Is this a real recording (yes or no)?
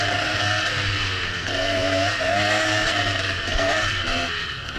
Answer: no